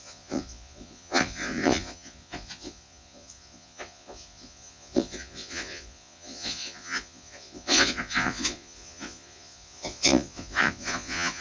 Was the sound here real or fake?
fake